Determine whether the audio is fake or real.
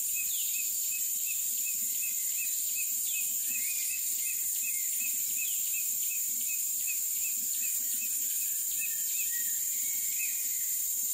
fake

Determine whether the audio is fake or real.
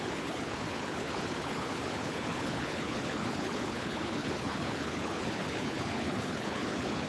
fake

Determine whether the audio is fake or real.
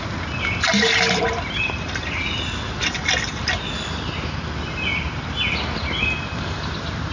real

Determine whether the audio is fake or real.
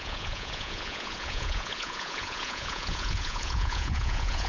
fake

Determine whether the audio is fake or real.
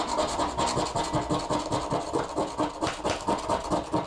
real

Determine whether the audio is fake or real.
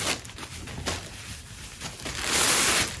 real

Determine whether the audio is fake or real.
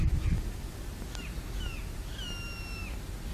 real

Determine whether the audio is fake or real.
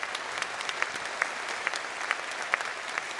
real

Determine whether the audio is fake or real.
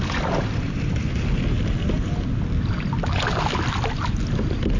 real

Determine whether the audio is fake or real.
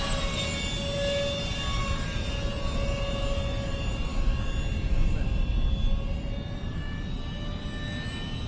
real